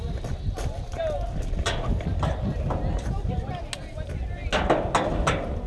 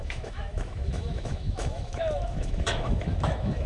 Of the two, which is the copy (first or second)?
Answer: second